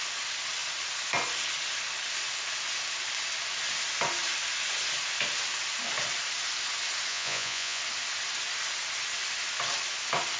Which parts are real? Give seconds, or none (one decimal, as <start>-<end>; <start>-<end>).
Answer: 0.0-7.1; 7.8-10.4